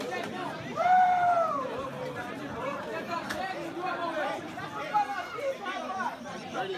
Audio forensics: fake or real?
fake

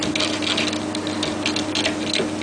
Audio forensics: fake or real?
real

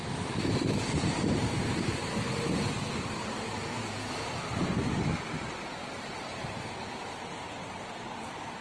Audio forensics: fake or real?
fake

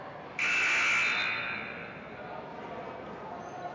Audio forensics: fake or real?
real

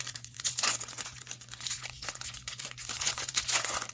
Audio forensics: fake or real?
fake